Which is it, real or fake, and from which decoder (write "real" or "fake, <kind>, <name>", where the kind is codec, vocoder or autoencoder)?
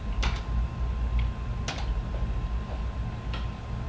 real